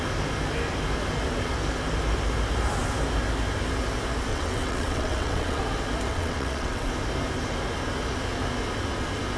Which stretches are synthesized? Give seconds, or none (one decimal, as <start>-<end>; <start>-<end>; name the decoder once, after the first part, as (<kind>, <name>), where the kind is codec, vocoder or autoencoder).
4.3-5.6 (vocoder, WaveNeXt); 6.1-6.9